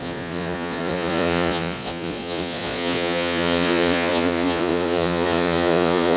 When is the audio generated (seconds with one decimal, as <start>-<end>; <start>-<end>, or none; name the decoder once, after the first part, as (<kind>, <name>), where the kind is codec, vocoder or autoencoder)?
0.0-6.2 (vocoder, Vocos)

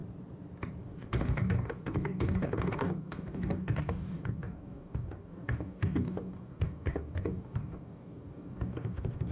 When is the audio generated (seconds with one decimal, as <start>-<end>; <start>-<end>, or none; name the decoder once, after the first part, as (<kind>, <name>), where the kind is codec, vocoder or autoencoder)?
0.8-9.3 (codec, DAC)